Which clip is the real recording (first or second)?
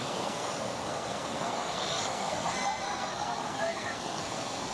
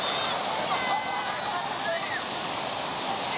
second